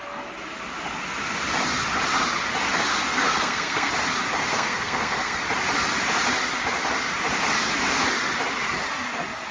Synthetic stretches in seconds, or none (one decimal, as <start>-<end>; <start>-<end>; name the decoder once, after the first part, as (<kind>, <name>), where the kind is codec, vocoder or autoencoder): 2.9-3.9 (codec, SNAC); 4.5-5.4